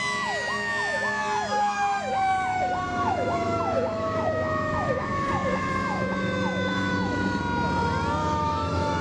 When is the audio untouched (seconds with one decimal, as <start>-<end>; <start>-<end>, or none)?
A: 0.0-1.5; 2.1-2.5; 7.4-8.2